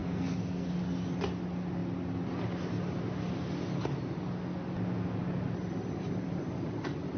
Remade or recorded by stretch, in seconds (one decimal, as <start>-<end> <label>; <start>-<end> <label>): 0.0-0.7 remade; 0.7-7.2 recorded